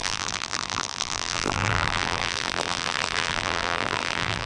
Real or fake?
fake